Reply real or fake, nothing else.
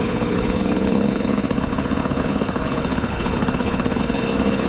fake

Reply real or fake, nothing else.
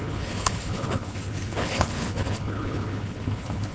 fake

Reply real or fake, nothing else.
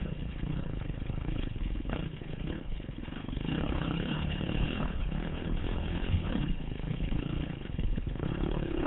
fake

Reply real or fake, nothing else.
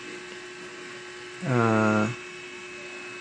real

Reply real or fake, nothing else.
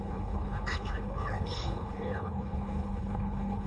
fake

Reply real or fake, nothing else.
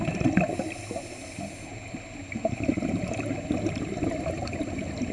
real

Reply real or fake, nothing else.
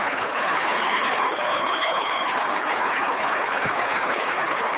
fake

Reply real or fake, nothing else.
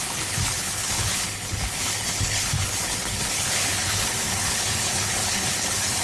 fake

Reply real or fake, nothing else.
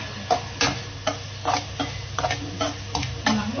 real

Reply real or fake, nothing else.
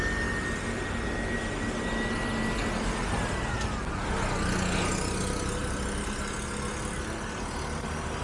real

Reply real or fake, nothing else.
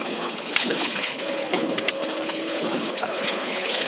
fake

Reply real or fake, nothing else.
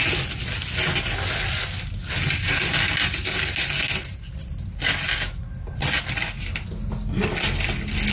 real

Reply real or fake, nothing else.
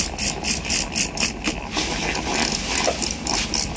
real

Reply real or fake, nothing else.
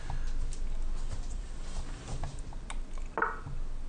real